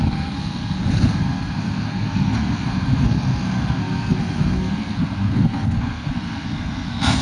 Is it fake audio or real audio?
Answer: fake